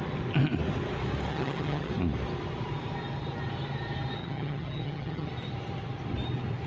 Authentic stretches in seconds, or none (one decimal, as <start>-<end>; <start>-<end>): 0.0-1.3; 1.9-4.2; 5.3-6.7

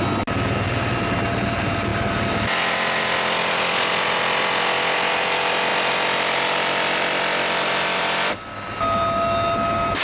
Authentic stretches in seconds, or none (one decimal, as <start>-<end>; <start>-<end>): 0.0-10.0

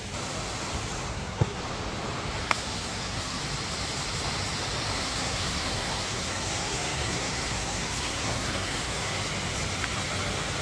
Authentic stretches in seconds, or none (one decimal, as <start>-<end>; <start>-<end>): 0.0-1.1; 1.6-2.4; 3.4-4.9; 9.2-10.6

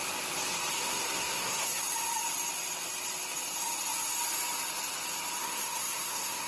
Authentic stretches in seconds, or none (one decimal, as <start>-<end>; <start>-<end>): 0.0-0.7; 1.8-5.4

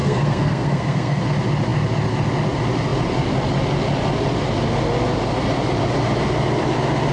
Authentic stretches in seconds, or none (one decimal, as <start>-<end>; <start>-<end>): 1.2-7.1

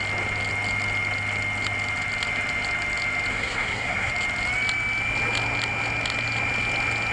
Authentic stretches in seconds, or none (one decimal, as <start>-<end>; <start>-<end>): 0.0-3.3; 4.1-7.1